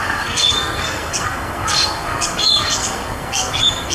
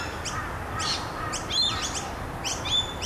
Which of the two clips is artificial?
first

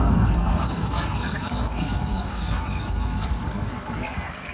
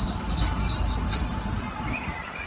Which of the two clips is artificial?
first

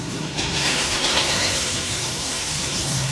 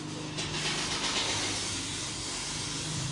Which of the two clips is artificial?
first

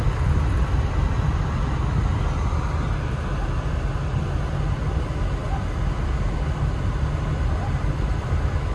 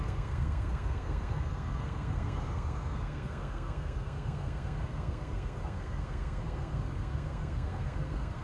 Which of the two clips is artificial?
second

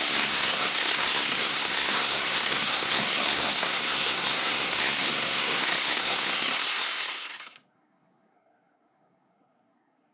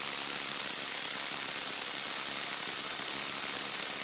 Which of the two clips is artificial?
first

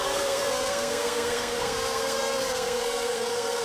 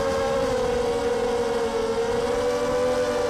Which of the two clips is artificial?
first